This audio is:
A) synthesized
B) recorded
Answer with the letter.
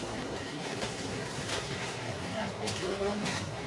A